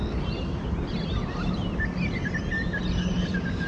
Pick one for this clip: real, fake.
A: real